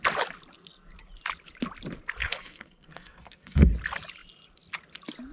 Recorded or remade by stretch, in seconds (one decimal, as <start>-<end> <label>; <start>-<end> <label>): 0.0-2.2 recorded; 2.2-3.7 remade; 3.7-5.3 recorded